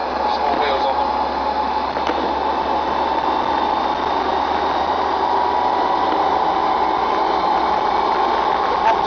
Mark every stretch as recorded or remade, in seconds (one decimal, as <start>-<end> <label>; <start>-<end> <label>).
0.0-9.1 recorded